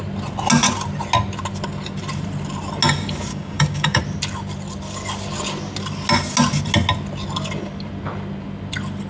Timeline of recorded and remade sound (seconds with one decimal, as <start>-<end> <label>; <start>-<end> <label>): 0.0-3.3 recorded; 3.3-4.0 remade; 4.0-9.1 recorded